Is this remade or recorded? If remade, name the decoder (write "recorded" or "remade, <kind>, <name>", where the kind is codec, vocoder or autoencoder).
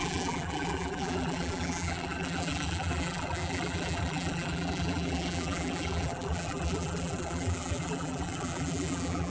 remade, vocoder, BigVGAN v2